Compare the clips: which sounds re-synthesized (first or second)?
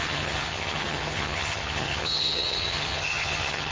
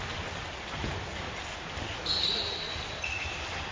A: first